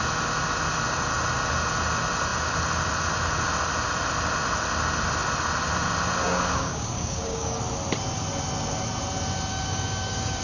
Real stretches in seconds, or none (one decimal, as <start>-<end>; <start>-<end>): 0.0-6.2; 7.6-9.5

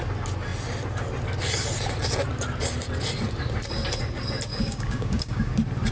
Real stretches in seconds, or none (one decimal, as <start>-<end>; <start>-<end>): 0.0-4.5; 5.5-5.9

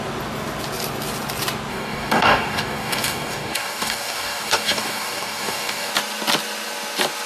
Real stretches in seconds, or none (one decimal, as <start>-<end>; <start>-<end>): 0.0-1.7; 5.9-7.3

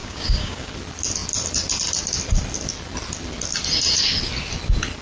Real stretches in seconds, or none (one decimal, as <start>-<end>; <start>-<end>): 0.7-5.0

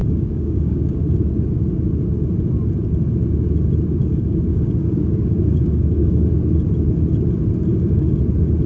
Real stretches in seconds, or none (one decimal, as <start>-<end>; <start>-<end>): 1.3-4.0; 6.3-7.7; 8.2-8.7